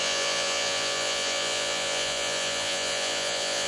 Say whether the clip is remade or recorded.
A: remade